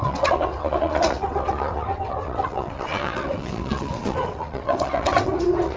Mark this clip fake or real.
fake